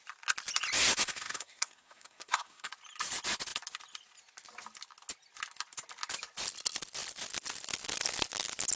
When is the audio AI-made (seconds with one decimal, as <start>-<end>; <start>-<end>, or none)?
0.9-2.7